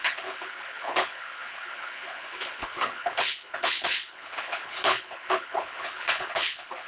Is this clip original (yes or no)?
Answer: no